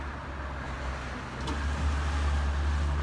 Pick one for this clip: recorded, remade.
recorded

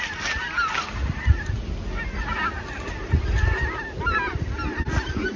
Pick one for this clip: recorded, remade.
recorded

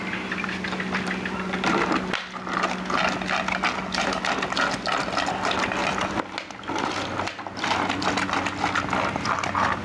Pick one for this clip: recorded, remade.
recorded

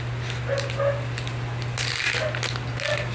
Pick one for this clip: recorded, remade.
recorded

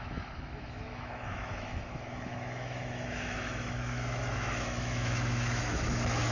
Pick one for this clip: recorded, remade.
remade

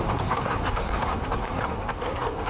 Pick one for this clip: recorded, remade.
remade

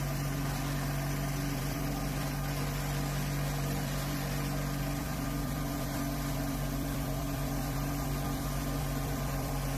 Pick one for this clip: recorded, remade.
remade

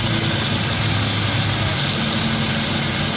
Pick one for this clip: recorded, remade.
recorded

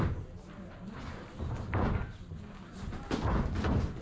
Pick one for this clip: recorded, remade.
recorded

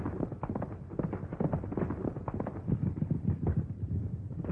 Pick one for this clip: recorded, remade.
recorded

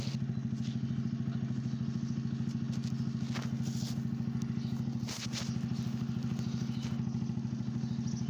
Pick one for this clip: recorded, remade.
recorded